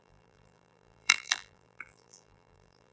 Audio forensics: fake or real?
fake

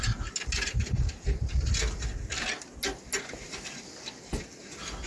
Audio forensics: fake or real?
real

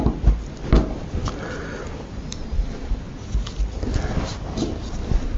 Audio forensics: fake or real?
real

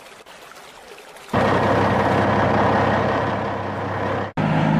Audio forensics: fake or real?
real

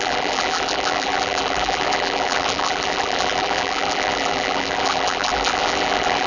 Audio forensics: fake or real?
fake